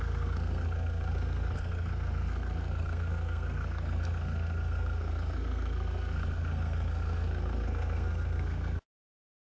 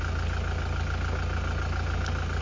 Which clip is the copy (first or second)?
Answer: first